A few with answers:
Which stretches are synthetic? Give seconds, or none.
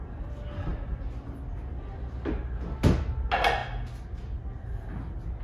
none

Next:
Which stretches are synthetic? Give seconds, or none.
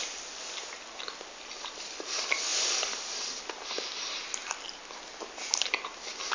none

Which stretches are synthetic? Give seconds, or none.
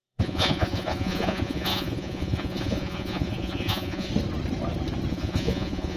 0.0-4.1 (vocoder, Vocos); 5.1-6.0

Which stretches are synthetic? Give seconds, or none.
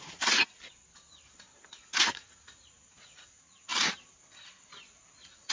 0.0-0.4 (vocoder, Vocos); 1.8-3.7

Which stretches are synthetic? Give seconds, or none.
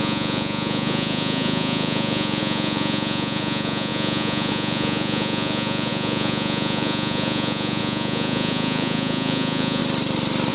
0.0-9.8 (vocoder, Vocos)